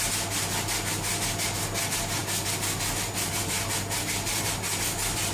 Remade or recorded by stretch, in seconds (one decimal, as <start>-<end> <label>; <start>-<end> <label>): 0.0-5.3 recorded